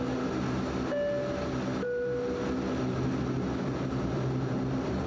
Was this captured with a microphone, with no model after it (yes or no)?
yes